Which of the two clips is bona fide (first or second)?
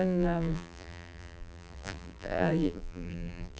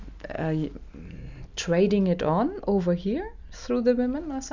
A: second